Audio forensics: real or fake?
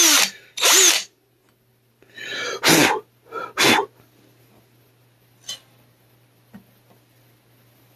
real